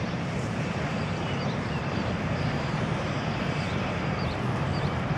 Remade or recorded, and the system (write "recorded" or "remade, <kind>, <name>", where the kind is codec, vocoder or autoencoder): remade, vocoder, BigVGAN v2